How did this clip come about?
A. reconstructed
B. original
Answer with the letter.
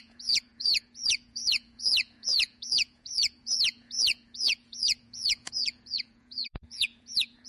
A